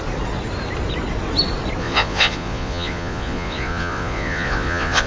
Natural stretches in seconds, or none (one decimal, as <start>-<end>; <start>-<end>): 0.0-1.8

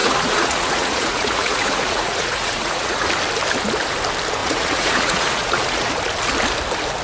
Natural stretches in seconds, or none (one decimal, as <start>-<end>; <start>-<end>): 3.1-4.4; 5.9-7.0

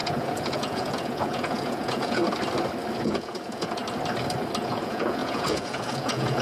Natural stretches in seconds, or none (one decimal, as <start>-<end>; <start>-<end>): 2.2-3.0; 3.8-4.6

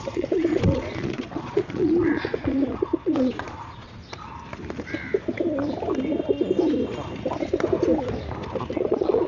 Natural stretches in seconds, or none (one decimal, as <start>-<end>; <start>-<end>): 4.0-8.7

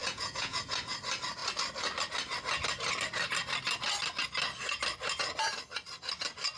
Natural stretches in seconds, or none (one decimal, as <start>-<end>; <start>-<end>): 0.6-6.6

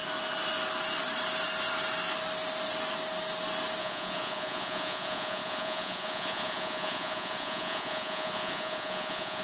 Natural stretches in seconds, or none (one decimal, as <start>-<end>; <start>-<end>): 0.0-3.8